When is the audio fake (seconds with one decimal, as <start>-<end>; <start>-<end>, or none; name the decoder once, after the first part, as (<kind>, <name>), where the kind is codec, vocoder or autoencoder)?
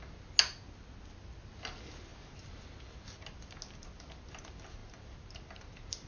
none